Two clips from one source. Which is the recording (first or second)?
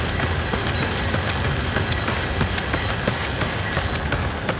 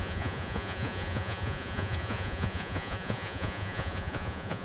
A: first